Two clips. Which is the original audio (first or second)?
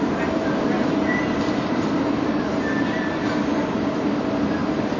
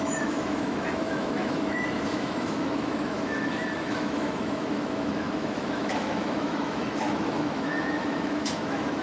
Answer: first